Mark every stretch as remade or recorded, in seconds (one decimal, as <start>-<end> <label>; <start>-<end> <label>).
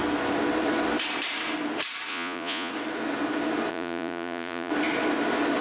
0.0-2.1 recorded; 2.1-2.7 remade; 2.7-3.7 recorded; 3.7-4.7 remade; 4.7-5.6 recorded